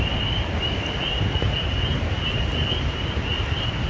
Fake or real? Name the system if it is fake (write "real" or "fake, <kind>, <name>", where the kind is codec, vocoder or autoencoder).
real